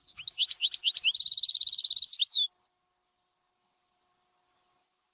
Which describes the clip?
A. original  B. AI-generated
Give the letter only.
A